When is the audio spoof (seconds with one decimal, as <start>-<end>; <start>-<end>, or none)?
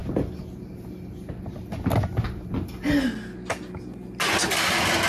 none